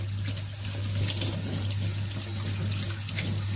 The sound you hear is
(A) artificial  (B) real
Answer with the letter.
B